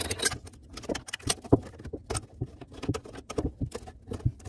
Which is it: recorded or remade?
recorded